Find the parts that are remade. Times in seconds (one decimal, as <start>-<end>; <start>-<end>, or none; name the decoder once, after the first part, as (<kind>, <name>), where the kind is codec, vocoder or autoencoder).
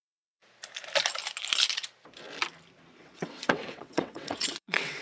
0.0-0.4 (vocoder, WaveNeXt); 3.0-5.0